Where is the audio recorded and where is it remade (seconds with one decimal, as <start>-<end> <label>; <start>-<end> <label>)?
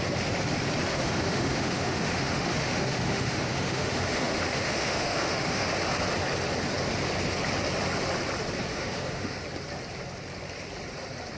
0.0-0.9 recorded; 0.9-5.7 remade; 5.7-8.7 recorded; 8.7-9.4 remade; 9.4-11.4 recorded